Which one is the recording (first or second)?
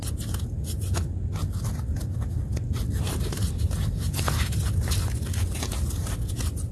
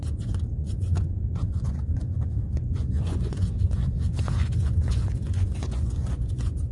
first